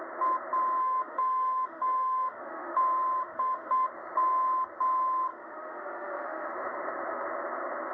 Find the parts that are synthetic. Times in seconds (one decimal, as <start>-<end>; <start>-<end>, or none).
0.8-2.8; 3.2-3.9; 5.3-6.5